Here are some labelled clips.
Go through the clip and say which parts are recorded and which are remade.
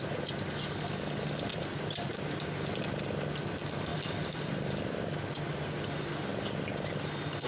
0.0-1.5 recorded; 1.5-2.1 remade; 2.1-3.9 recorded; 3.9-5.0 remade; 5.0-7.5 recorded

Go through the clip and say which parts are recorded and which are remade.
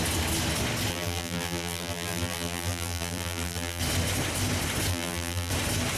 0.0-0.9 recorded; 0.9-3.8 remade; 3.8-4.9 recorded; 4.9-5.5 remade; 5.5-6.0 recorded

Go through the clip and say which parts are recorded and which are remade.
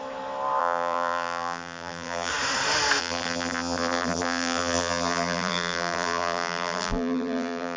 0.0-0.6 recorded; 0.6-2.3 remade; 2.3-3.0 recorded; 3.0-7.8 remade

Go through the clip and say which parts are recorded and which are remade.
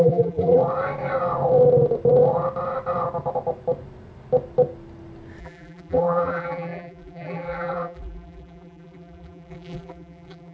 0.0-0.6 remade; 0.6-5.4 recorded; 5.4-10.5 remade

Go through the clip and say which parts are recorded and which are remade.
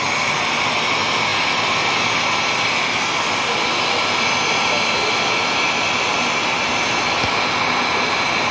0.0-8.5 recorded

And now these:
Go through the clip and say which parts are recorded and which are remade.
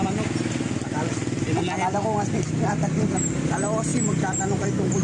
0.0-5.0 recorded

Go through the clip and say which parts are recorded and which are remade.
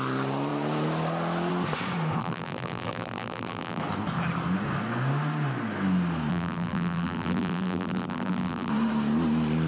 0.0-2.2 recorded; 2.2-3.8 remade; 3.8-6.3 recorded; 6.3-8.7 remade; 8.7-9.7 recorded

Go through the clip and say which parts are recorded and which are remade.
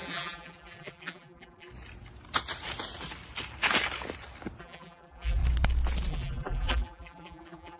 0.0-1.7 remade; 1.7-4.6 recorded; 4.6-5.4 remade; 5.4-6.1 recorded; 6.1-7.8 remade